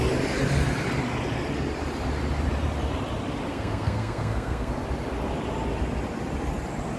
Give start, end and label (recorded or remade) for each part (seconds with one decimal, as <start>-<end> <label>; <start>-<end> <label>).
0.0-3.5 recorded; 3.5-4.7 remade; 4.7-7.0 recorded